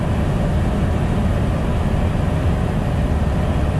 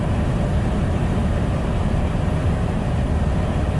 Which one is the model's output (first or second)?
second